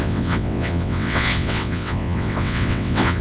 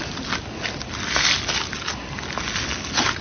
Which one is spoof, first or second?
first